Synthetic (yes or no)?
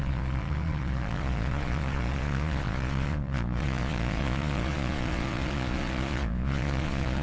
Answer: yes